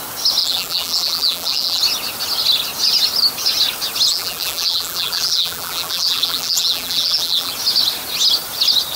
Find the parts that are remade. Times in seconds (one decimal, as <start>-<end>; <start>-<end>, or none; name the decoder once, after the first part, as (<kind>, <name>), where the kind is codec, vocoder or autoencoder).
0.4-1.8 (vocoder, BigVGAN v2); 4.1-7.5